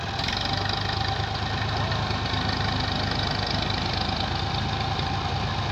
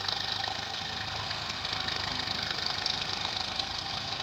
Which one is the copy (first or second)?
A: second